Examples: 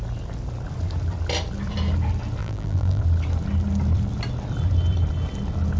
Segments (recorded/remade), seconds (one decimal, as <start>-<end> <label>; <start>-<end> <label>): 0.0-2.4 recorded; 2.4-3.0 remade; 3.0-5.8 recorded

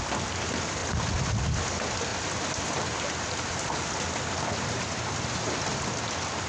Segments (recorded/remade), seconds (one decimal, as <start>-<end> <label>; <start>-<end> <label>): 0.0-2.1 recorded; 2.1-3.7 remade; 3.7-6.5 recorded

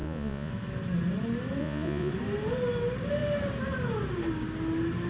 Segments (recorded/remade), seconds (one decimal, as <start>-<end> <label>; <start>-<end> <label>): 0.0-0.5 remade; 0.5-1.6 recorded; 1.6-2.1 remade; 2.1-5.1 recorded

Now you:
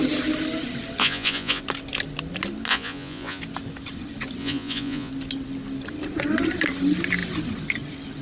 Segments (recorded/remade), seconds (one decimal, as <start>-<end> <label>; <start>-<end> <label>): 0.0-1.0 recorded; 1.0-1.6 remade; 1.6-2.7 recorded; 2.7-3.4 remade; 3.4-4.4 recorded; 4.4-5.1 remade; 5.1-8.2 recorded

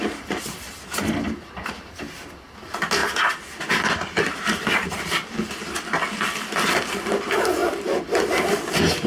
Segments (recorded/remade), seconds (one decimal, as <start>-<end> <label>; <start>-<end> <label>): 0.0-9.1 recorded

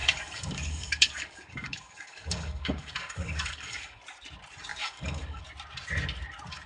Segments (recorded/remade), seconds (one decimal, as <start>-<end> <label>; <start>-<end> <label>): 0.0-4.0 remade; 4.0-4.7 recorded; 4.7-5.4 remade; 5.4-6.7 recorded